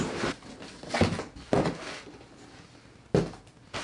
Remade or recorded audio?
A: recorded